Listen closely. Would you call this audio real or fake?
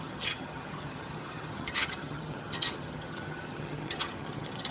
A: fake